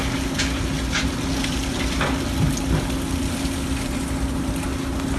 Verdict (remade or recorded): recorded